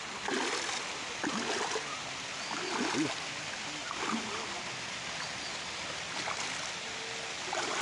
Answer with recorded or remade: recorded